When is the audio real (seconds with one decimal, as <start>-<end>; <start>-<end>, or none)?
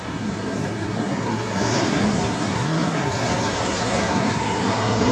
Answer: none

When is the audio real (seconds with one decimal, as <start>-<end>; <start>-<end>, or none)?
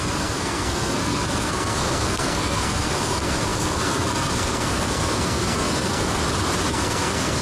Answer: 6.2-6.7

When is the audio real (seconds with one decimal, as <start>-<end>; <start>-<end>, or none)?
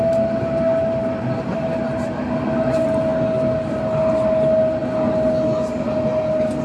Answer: 0.0-6.6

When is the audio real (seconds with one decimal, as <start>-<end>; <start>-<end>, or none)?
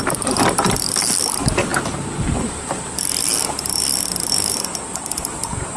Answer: 0.0-5.8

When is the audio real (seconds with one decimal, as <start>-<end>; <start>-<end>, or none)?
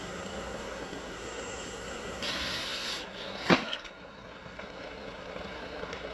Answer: none